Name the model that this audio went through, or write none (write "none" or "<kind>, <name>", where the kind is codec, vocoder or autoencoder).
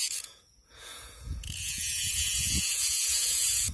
vocoder, Vocos